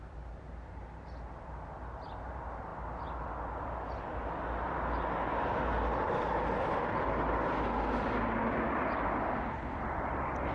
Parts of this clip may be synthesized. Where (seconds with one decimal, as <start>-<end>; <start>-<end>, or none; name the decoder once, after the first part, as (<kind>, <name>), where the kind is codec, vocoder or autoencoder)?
none